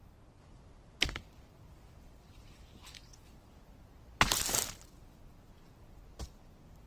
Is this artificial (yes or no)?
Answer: no